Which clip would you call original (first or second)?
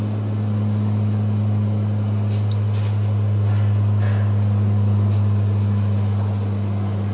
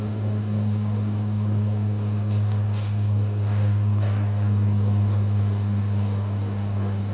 first